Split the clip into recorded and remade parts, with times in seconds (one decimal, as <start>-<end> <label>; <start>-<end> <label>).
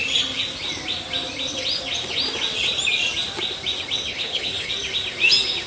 0.0-4.1 recorded; 4.1-4.7 remade; 4.7-5.7 recorded